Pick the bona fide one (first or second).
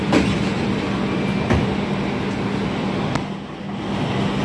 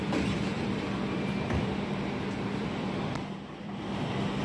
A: first